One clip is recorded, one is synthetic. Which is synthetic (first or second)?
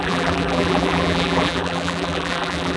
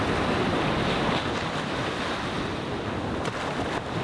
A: first